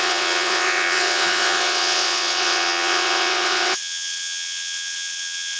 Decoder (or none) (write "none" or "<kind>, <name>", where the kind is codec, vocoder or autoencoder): vocoder, WaveNeXt